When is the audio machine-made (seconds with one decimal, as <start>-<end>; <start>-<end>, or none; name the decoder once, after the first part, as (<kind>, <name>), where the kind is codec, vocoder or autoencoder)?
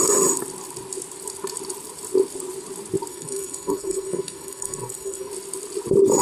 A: 3.1-5.3 (codec, SNAC)